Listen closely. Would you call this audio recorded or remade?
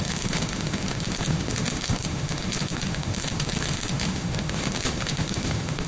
remade